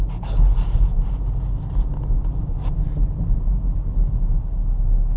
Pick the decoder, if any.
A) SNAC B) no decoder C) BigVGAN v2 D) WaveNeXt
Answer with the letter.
B